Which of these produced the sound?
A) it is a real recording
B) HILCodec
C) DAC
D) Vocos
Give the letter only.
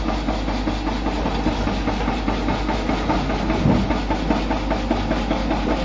A